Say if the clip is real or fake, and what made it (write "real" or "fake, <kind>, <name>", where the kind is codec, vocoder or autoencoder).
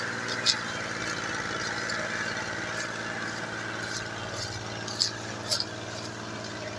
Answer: real